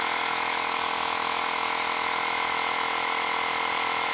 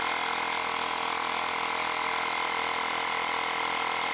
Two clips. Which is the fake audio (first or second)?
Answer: first